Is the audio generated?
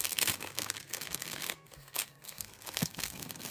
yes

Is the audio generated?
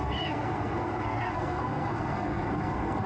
yes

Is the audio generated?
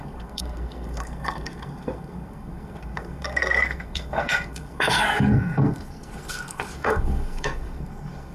yes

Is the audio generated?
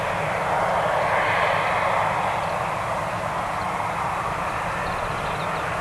no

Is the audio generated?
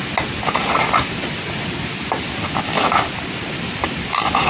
no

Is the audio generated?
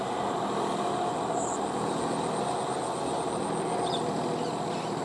no